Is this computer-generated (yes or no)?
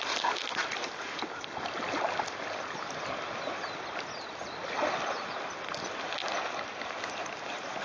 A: no